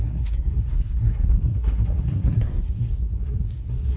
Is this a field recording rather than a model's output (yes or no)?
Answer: no